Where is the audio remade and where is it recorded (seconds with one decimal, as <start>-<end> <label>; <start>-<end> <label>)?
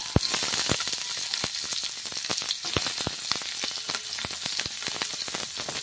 0.0-5.8 recorded